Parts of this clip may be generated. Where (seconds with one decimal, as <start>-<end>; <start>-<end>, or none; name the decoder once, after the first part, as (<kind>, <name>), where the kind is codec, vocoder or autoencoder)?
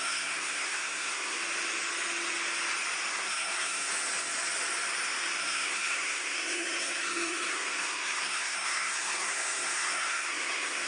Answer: 0.0-1.4 (codec, SNAC); 3.1-3.9; 5.4-10.9